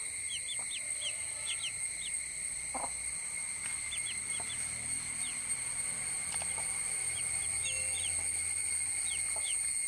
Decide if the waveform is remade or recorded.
recorded